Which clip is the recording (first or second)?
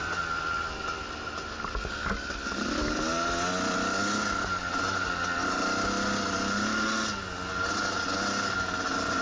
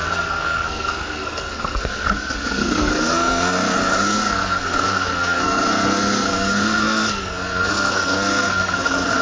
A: first